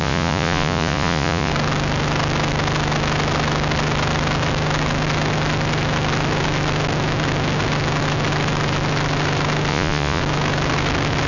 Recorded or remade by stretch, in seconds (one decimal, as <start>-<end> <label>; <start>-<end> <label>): 0.0-1.5 remade; 1.5-9.7 recorded; 9.7-10.2 remade; 10.2-11.3 recorded